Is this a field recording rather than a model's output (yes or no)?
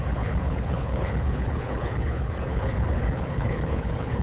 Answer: no